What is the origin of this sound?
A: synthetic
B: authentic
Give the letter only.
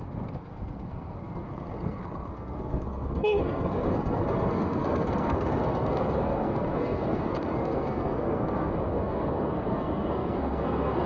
A